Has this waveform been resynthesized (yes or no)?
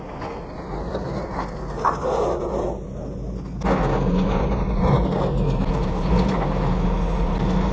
no